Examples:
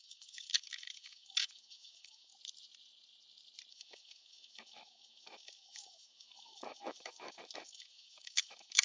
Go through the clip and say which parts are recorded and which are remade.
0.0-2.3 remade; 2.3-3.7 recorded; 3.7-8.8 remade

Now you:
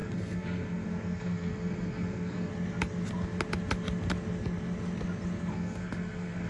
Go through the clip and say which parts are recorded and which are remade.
0.0-2.5 remade; 2.5-5.5 recorded; 5.5-6.5 remade

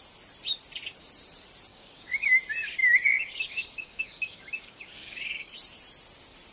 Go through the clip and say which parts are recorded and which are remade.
0.0-1.7 recorded; 1.7-2.4 remade; 2.4-2.8 recorded; 2.8-5.5 remade; 5.5-6.5 recorded

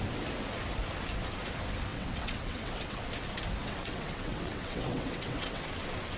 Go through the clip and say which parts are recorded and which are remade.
0.0-1.9 recorded; 1.9-3.0 remade; 3.0-3.6 recorded; 3.6-5.6 remade; 5.6-6.2 recorded

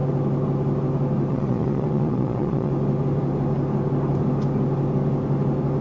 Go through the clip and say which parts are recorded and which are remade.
0.0-1.3 recorded; 1.3-2.7 remade; 2.7-5.8 recorded

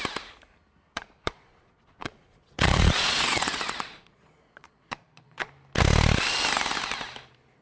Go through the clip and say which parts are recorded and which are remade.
0.0-0.9 recorded; 0.9-5.5 remade; 5.5-7.6 recorded